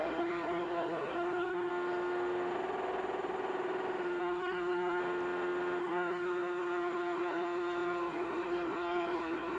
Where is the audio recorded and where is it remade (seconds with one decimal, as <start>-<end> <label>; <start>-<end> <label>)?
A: 0.0-1.7 remade; 1.7-4.2 recorded; 4.2-5.0 remade; 5.0-5.8 recorded; 5.8-9.6 remade